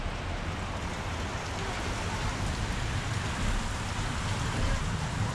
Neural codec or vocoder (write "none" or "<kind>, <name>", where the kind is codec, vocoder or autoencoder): none